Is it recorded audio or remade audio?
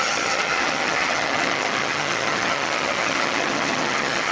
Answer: remade